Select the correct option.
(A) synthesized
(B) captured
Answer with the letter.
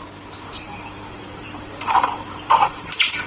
A